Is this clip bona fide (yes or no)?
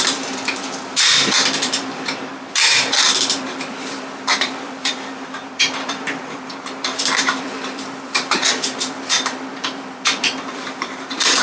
no